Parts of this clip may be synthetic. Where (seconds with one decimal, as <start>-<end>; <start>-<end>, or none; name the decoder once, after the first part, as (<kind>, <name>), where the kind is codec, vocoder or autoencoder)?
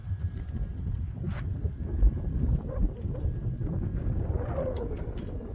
none